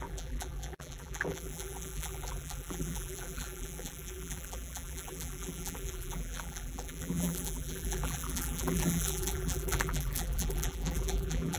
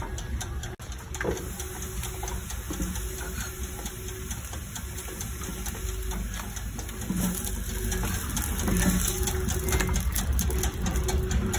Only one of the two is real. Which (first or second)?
second